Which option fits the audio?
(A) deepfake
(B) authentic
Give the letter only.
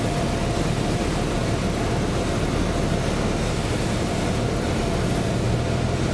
B